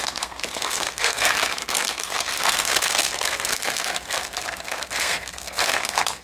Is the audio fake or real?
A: fake